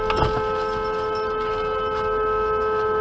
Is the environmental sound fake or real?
real